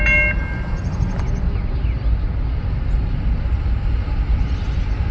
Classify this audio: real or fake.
real